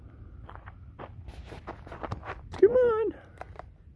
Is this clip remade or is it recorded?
remade